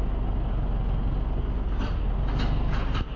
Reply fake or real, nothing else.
real